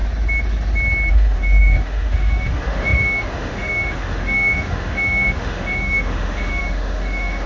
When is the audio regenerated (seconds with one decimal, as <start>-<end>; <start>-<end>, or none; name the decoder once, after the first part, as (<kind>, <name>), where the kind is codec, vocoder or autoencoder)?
1.1-7.5 (autoencoder, DAC-VAE)